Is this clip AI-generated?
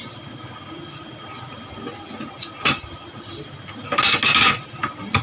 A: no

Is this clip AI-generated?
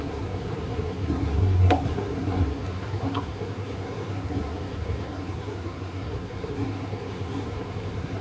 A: yes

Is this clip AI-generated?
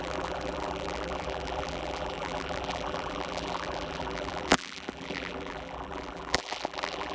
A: yes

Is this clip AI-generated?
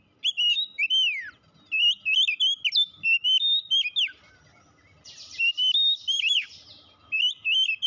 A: no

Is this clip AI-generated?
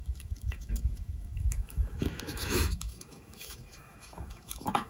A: yes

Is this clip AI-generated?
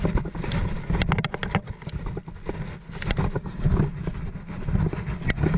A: no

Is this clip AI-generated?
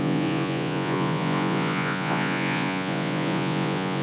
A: yes